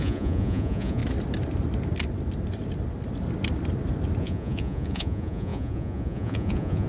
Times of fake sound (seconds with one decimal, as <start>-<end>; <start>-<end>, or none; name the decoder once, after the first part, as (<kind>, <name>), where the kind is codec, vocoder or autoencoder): 0.0-1.0 (vocoder, Vocos); 4.2-6.9